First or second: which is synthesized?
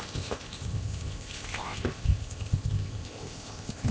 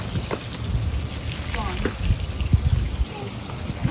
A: first